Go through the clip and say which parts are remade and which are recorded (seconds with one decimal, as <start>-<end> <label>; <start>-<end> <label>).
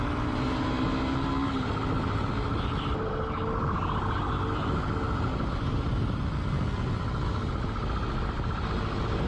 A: 0.0-5.3 recorded; 5.3-6.2 remade; 6.2-9.3 recorded